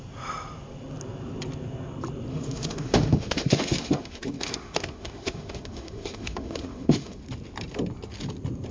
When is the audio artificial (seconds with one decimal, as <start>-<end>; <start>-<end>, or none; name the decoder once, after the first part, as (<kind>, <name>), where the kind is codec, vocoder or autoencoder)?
2.3-7.2 (autoencoder, DAC-VAE)